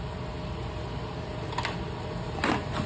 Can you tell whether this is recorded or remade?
recorded